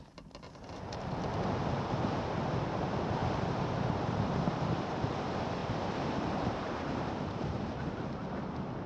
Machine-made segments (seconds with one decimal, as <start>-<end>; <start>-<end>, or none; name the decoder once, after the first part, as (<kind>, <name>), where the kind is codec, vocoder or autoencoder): 3.2-5.1 (vocoder, BigVGAN v2); 5.6-8.0